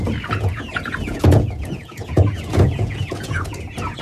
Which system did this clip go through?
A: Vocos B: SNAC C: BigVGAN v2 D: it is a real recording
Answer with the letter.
A